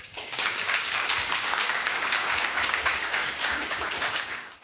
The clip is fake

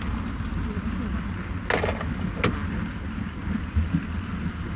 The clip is real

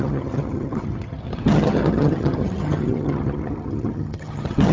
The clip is fake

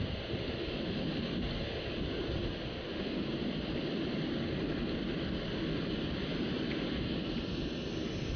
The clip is real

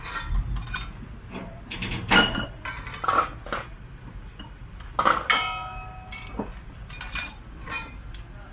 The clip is real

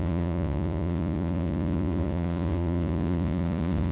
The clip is fake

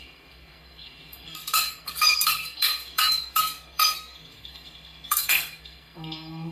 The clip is fake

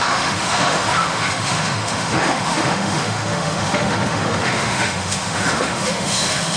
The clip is fake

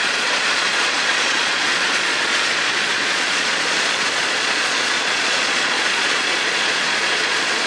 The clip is fake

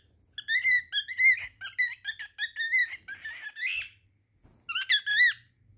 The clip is real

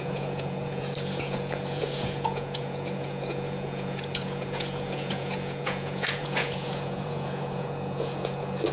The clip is fake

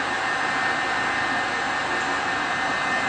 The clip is real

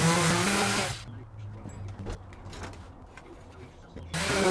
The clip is real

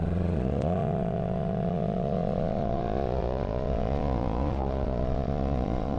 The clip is fake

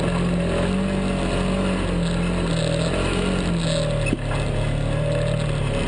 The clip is real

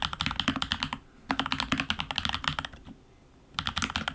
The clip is real